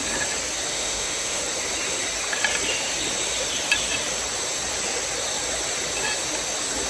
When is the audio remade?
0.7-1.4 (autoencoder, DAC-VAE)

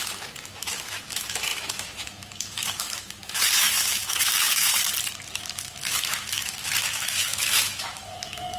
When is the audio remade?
0.0-4.7 (autoencoder, DAC-VAE); 5.3-8.6

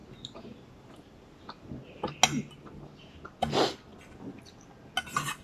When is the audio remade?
none

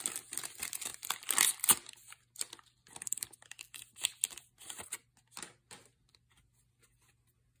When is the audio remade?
none

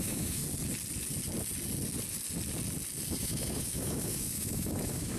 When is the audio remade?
0.0-0.4 (autoencoder, DAC-VAE); 3.2-5.2